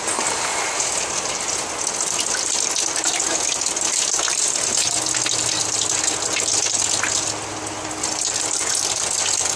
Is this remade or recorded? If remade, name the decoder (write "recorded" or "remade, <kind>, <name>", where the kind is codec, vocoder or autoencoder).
recorded